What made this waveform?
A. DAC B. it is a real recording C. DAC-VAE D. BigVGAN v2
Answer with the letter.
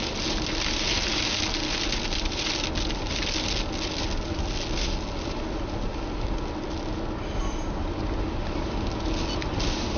B